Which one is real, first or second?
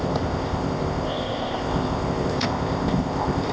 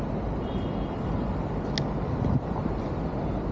second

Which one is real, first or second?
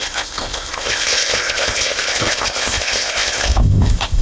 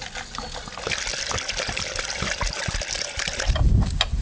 second